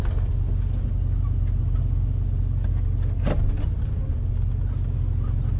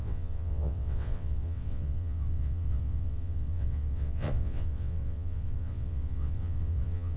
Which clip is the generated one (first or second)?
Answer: second